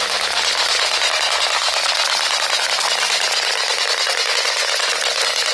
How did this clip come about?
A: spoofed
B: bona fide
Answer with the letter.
B